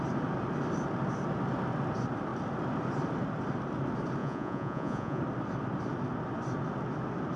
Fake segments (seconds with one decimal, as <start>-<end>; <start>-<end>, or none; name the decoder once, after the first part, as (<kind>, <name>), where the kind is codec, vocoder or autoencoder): 4.2-5.2 (vocoder, Vocos)